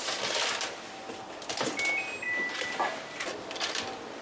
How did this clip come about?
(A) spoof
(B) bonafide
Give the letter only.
B